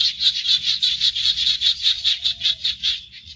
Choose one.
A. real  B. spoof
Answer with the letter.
B